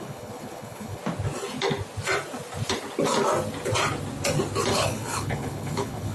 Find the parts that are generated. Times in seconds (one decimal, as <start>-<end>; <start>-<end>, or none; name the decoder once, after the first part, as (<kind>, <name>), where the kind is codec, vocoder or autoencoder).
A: 0.0-1.0 (codec, HILCodec); 4.7-6.1